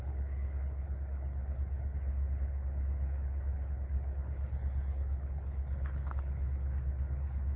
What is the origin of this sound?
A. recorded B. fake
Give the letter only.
B